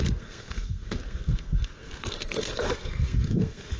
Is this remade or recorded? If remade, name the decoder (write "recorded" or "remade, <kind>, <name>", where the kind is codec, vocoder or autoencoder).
remade, codec, SNAC